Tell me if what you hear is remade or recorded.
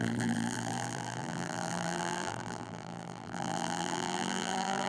remade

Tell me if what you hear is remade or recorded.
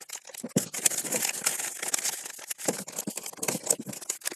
recorded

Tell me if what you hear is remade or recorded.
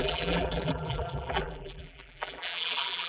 remade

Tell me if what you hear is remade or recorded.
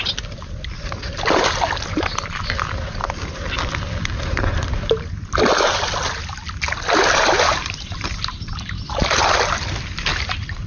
recorded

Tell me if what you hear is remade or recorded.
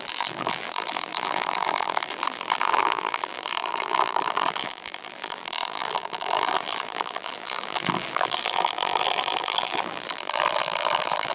remade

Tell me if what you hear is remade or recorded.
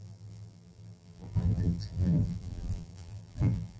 remade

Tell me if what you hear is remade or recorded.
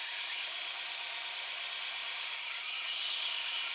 remade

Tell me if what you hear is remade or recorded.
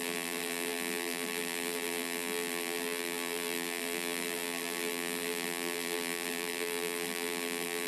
remade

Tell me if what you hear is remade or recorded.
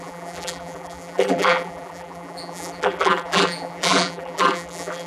remade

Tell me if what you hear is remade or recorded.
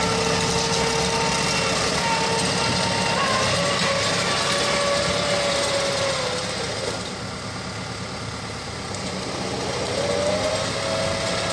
recorded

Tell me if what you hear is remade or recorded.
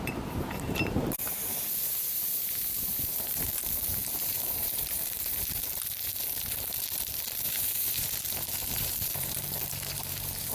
remade